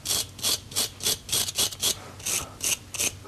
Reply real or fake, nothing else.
real